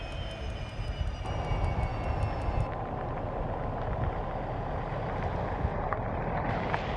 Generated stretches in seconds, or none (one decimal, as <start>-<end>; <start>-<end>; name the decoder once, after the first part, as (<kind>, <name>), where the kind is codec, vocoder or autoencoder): none